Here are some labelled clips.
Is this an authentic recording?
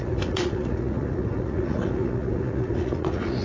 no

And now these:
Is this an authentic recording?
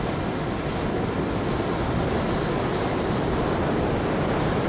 yes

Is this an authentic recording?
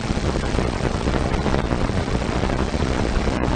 no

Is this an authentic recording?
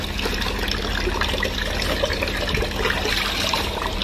yes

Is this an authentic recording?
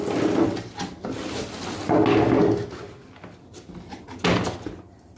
yes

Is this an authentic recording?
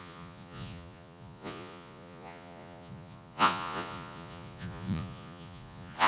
no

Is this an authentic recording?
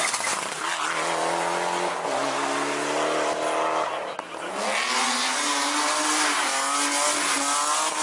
yes